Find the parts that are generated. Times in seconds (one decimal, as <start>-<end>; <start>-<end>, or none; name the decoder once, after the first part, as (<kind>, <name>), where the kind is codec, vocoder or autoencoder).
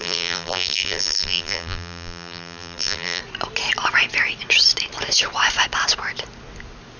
0.0-3.2 (vocoder, BigVGAN v2)